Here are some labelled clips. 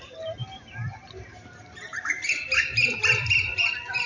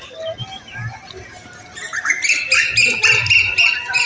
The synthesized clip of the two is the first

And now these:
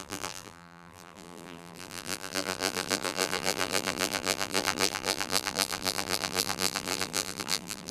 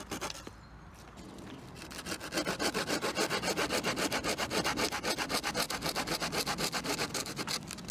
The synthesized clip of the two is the first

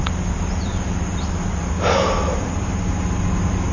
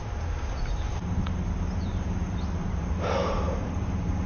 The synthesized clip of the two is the second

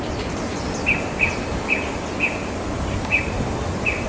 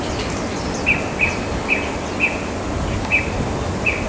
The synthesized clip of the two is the first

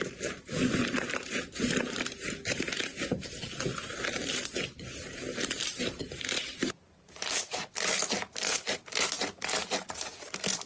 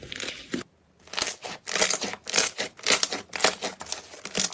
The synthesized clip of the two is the first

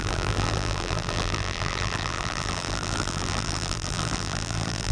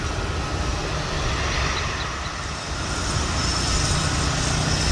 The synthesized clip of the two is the first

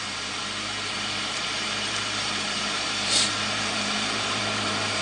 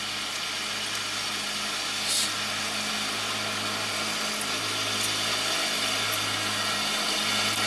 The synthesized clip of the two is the first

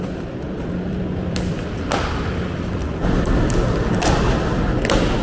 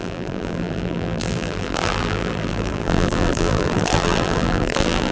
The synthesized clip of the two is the second